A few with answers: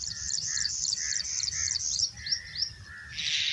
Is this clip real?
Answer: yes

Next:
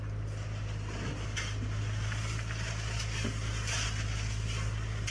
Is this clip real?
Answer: yes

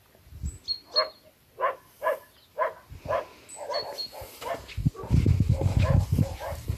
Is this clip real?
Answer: yes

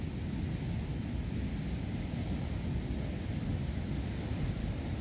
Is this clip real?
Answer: yes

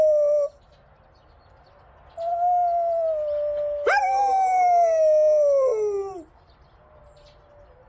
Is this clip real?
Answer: yes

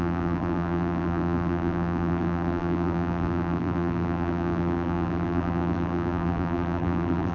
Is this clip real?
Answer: no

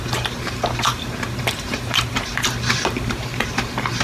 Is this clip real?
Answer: no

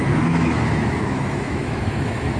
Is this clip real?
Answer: no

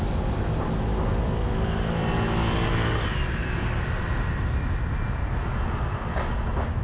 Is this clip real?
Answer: yes